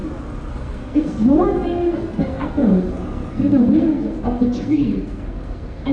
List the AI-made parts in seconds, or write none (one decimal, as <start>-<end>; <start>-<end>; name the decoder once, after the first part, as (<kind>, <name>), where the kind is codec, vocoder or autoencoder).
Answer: 0.5-5.9 (codec, SNAC)

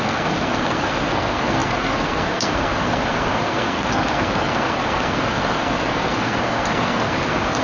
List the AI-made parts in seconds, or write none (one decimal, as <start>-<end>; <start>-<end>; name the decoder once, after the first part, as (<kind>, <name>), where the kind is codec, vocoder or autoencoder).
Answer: 0.0-7.6 (codec, SNAC)

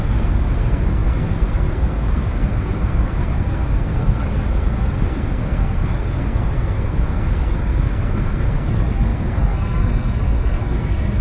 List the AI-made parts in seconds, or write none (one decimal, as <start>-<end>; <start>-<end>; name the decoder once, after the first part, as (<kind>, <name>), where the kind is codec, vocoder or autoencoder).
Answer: 0.0-11.2 (codec, SNAC)

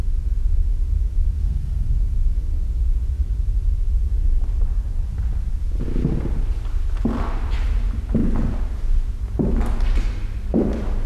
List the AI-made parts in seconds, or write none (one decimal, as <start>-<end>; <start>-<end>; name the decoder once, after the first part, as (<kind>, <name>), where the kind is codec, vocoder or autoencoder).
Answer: 1.4-1.9 (codec, SNAC)

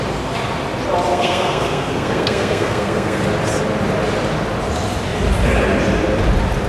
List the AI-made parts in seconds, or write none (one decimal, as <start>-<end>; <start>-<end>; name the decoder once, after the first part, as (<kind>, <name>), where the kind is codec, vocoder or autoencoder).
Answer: 1.1-3.2 (codec, SNAC)

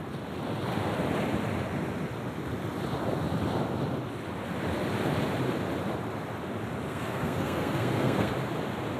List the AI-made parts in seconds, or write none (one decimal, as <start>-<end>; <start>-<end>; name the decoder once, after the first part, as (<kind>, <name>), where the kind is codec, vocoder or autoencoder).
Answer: 6.9-8.3 (codec, SNAC)